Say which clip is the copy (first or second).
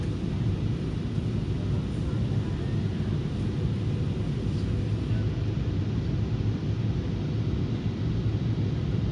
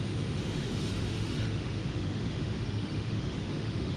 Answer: second